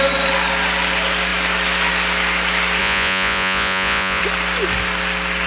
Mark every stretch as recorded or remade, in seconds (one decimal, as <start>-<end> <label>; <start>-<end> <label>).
0.0-2.8 recorded; 2.8-4.2 remade; 4.2-5.5 recorded

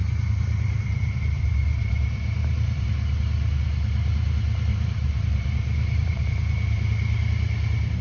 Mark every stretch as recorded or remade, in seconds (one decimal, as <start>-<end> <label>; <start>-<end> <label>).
0.0-2.9 remade; 2.9-4.7 recorded; 4.7-6.2 remade; 6.2-8.0 recorded

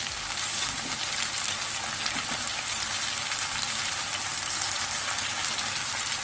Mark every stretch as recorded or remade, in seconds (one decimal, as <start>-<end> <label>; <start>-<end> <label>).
0.0-6.2 recorded

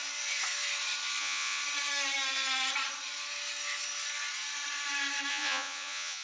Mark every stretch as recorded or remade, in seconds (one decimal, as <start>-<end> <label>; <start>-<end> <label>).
0.0-1.2 recorded; 1.2-1.6 remade; 1.6-5.3 recorded; 5.3-6.2 remade

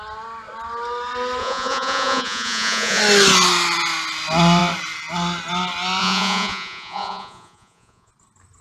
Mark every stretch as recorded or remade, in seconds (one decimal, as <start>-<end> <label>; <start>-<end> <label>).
0.0-1.4 recorded; 1.4-3.0 remade; 3.0-6.0 recorded; 6.0-8.1 remade; 8.1-8.6 recorded

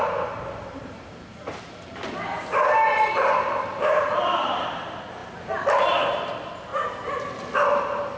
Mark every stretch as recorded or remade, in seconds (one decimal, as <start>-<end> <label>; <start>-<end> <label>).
0.0-0.8 recorded; 0.8-4.8 remade; 4.8-5.2 recorded; 5.2-6.3 remade; 6.3-8.2 recorded

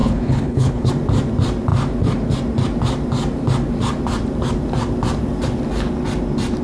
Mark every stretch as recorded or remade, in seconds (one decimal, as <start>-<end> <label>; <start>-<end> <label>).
0.0-0.9 remade; 0.9-6.6 recorded